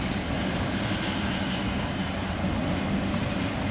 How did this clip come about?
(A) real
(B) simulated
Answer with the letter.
A